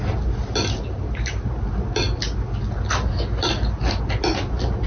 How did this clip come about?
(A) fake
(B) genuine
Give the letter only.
B